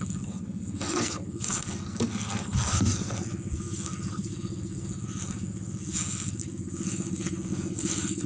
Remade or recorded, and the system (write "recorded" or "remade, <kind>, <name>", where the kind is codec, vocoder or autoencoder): remade, codec, SNAC